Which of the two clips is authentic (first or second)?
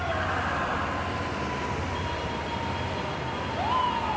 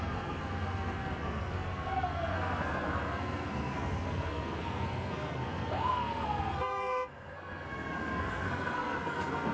first